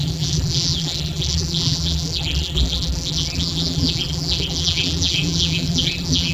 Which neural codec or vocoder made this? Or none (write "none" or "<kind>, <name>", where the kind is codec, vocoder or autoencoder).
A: vocoder, BigVGAN v2